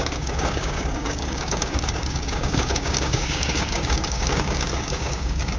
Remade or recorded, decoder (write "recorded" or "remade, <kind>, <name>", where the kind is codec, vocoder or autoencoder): remade, codec, DAC